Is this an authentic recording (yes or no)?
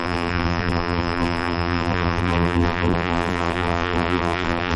no